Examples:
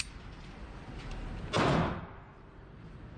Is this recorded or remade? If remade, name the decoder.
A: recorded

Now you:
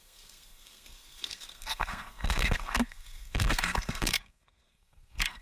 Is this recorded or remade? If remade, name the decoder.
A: remade, codec, SNAC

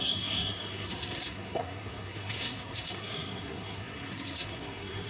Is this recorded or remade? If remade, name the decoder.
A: remade, codec, SNAC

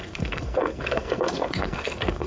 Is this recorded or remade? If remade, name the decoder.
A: remade, codec, SNAC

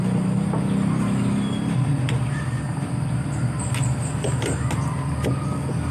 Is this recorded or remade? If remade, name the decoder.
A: recorded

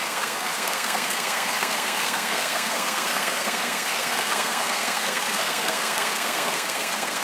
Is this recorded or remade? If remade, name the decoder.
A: remade, codec, SNAC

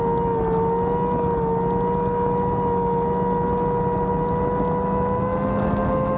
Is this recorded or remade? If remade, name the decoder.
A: recorded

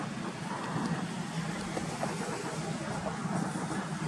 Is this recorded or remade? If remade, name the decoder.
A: recorded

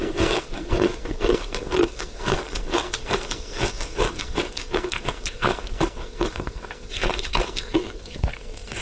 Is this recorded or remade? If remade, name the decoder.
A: remade, codec, SNAC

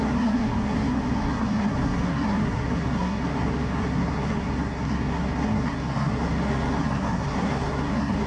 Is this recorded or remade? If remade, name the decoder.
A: remade, codec, SNAC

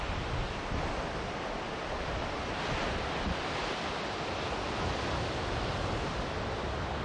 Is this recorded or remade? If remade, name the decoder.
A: recorded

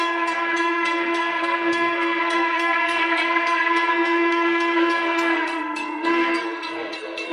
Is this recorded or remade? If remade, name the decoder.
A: remade, codec, SNAC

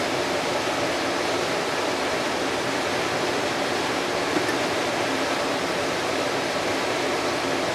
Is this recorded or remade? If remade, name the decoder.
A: recorded